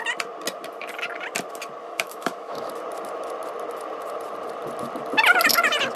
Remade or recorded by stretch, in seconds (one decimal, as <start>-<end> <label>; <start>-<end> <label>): 0.0-1.8 recorded; 1.8-2.7 remade; 2.7-6.0 recorded